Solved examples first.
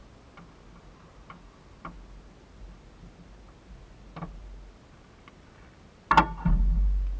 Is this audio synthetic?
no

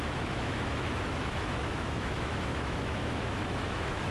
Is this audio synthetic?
yes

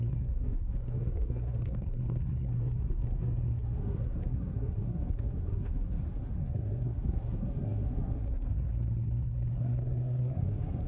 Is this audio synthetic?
yes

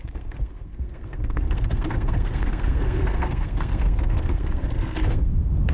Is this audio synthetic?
yes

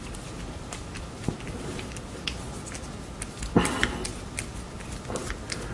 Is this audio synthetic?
no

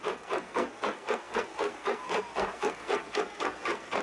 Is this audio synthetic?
yes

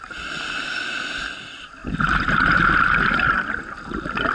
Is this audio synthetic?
no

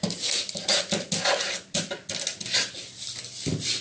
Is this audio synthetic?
no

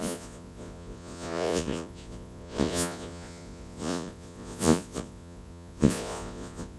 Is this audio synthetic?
yes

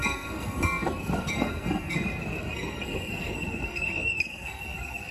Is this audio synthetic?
yes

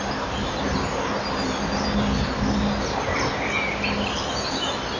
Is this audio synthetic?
no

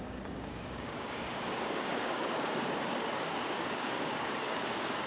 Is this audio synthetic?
yes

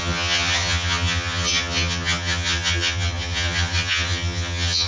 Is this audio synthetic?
yes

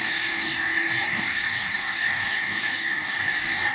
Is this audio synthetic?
yes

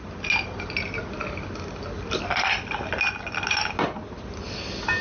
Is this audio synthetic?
no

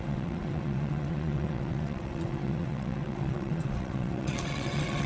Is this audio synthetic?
yes